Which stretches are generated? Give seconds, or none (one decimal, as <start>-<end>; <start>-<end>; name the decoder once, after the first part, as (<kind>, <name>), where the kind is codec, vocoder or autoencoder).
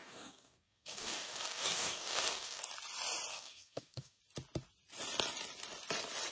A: 0.0-2.6 (codec, DAC); 3.3-4.2